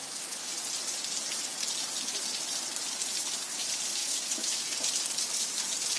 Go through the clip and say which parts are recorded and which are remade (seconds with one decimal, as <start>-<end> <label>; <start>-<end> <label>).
0.0-0.5 remade; 0.5-4.0 recorded; 4.0-4.6 remade; 4.6-6.0 recorded